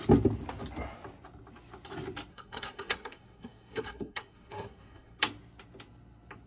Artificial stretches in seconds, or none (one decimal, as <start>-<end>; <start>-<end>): 2.3-5.2